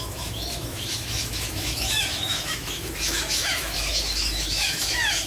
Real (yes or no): no